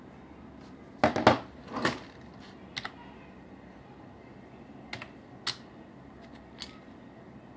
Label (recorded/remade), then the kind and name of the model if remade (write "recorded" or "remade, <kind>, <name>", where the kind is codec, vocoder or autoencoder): recorded